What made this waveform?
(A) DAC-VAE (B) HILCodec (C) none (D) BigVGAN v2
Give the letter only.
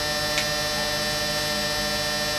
C